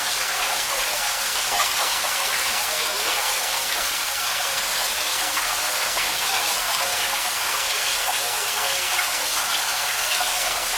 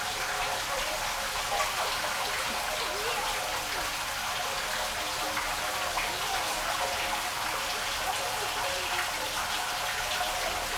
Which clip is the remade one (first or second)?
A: first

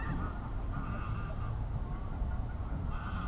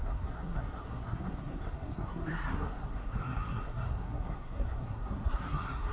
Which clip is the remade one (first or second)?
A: second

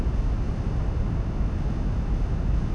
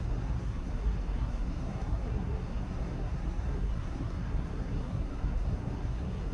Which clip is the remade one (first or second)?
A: second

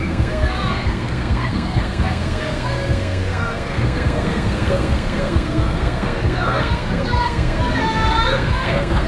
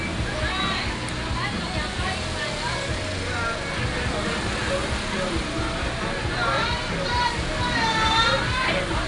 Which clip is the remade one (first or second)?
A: first